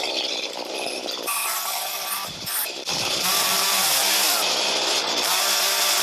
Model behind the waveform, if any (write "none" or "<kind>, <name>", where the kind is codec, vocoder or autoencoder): vocoder, BigVGAN v2